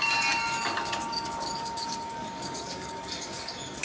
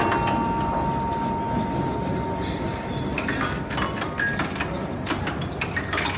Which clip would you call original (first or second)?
second